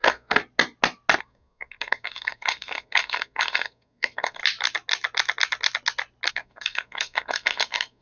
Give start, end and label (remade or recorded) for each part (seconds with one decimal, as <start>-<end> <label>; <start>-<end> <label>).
0.0-0.4 remade; 0.4-1.2 recorded; 1.2-4.4 remade; 4.4-6.3 recorded; 6.3-8.0 remade